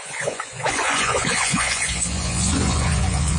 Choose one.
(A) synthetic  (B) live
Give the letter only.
A